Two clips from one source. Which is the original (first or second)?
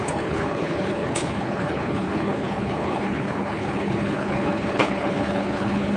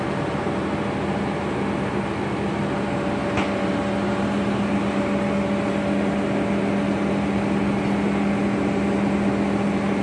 second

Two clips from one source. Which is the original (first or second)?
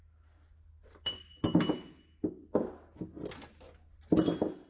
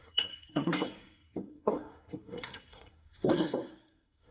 first